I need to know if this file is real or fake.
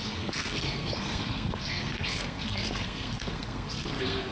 fake